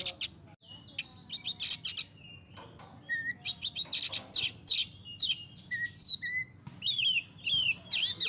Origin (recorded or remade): recorded